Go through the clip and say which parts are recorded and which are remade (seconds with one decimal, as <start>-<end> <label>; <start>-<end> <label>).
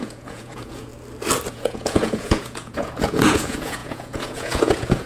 0.0-0.9 remade; 0.9-1.5 recorded; 1.5-5.1 remade